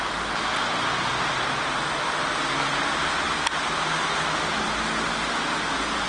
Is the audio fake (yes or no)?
no